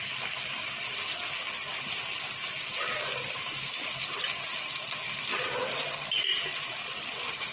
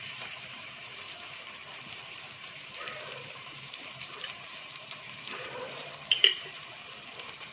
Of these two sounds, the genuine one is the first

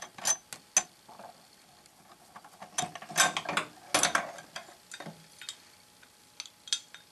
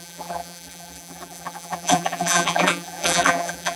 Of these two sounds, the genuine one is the first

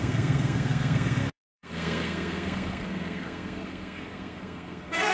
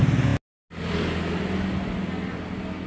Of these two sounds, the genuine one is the second